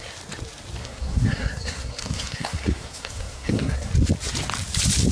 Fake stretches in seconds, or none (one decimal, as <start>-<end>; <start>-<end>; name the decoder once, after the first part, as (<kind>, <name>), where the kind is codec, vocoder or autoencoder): 0.8-3.9 (codec, SNAC)